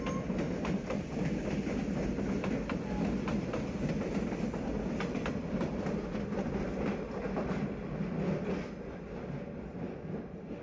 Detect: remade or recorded recorded